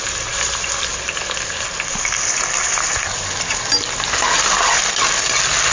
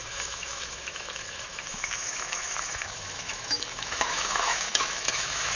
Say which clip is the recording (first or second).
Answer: first